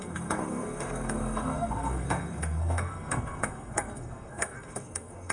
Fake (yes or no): yes